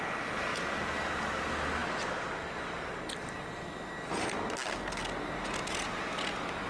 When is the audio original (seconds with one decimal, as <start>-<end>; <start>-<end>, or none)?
0.0-0.5; 1.4-6.7